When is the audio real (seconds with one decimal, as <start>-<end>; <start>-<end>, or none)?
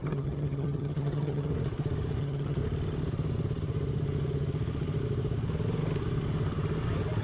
1.5-2.2; 2.6-7.2